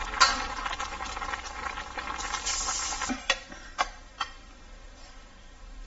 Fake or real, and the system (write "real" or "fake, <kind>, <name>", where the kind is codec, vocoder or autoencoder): real